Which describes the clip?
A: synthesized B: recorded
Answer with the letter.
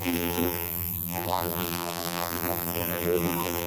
A